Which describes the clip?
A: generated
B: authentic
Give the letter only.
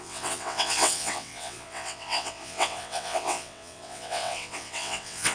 A